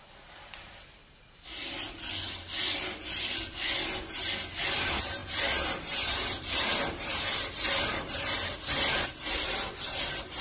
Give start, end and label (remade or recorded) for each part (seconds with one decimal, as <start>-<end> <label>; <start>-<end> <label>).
0.0-1.0 remade; 1.0-4.6 recorded; 4.6-10.4 remade